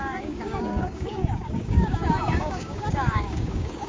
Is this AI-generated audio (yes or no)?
yes